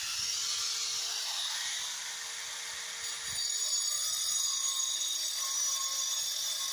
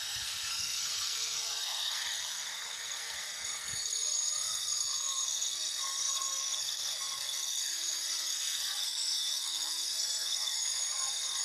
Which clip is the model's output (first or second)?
second